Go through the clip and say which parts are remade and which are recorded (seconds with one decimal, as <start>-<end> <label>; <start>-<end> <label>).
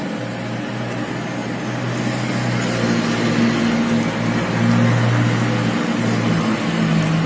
0.0-7.3 recorded